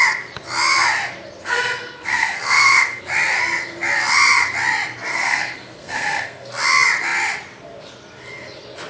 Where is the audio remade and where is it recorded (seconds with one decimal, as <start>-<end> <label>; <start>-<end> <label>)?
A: 0.0-1.4 recorded; 1.4-3.0 remade; 3.0-5.1 recorded; 5.1-6.5 remade; 6.5-8.9 recorded